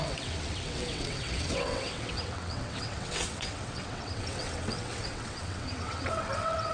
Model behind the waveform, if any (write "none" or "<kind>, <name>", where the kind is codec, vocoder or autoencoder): vocoder, WaveNeXt